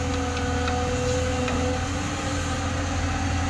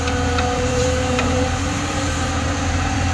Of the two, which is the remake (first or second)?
second